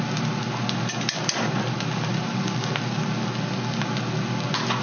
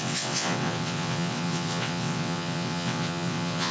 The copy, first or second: second